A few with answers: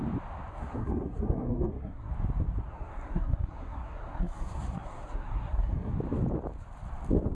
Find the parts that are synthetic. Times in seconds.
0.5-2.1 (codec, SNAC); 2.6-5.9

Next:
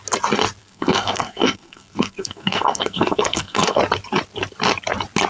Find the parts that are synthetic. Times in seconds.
0.6-3.8 (codec, SNAC)

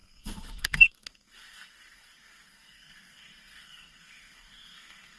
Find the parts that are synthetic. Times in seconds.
0.0-5.2 (codec, SNAC)

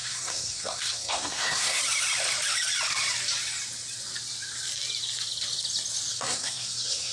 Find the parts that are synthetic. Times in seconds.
0.0-1.8 (codec, SNAC); 6.1-7.1

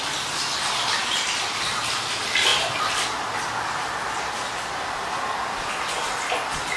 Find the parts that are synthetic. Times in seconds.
none

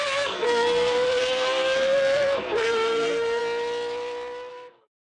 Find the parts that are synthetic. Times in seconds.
0.0-3.4 (codec, SNAC); 4.5-5.1

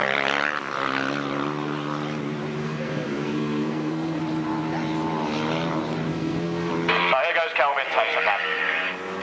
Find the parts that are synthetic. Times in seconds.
2.6-4.2 (codec, SNAC); 6.1-6.7